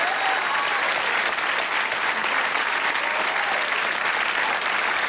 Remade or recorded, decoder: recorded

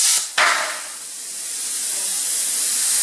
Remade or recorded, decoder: recorded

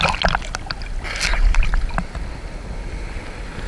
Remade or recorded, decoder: recorded